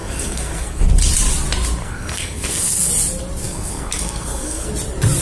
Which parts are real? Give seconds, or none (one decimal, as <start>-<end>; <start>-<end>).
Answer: 0.9-1.8; 2.9-3.4; 4.7-5.2